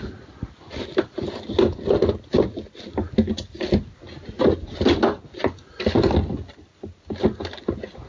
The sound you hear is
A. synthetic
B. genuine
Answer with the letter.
B